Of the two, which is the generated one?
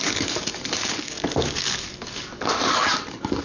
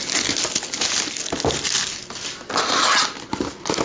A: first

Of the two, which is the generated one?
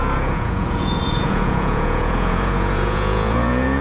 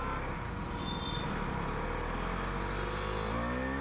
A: first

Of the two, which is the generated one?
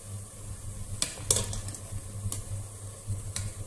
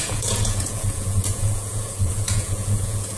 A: second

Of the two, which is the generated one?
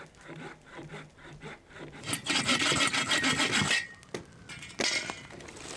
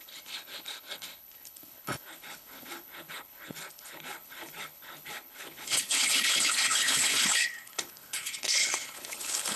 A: second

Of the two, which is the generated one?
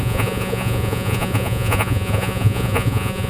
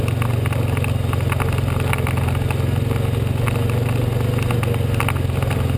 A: first